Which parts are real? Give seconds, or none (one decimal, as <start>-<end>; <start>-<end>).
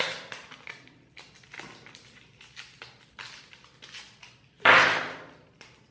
0.0-5.9